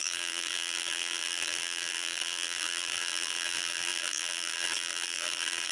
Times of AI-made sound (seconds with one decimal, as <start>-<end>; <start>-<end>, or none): 0.0-5.7

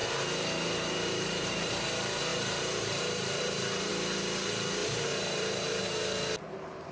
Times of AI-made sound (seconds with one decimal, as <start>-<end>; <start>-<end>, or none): 0.0-1.7; 2.3-3.9; 4.8-5.8

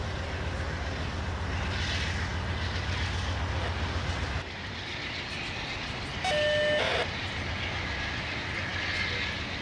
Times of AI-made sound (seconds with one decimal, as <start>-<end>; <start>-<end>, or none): none

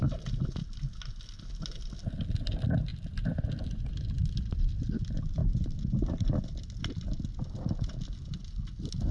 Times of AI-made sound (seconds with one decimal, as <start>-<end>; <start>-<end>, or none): 5.4-6.4